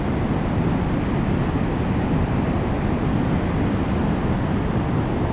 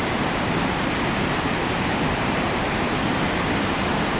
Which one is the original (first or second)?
first